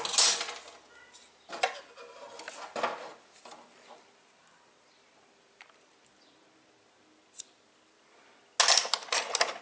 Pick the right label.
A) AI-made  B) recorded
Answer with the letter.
B